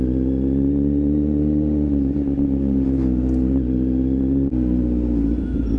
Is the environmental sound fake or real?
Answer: real